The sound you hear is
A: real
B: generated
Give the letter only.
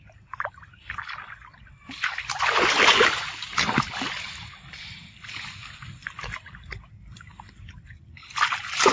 A